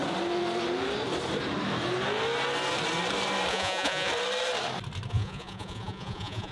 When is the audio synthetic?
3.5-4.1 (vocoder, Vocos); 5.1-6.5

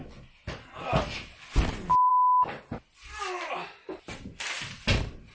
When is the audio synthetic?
none

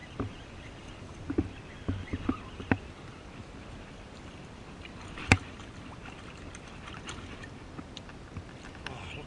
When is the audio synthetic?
none

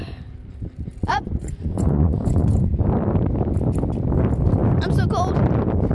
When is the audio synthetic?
1.1-2.7 (vocoder, Vocos)